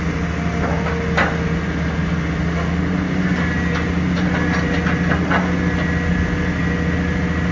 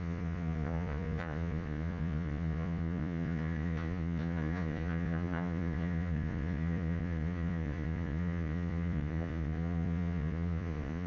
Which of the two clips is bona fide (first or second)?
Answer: first